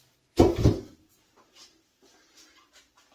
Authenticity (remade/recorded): recorded